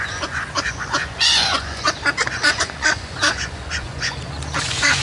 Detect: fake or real fake